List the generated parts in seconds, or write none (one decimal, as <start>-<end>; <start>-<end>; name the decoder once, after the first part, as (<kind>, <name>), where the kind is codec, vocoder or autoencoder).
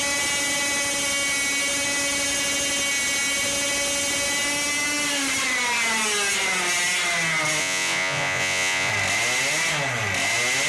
7.6-8.9 (vocoder, Vocos)